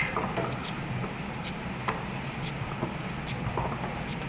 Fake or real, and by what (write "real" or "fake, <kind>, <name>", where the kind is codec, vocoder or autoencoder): real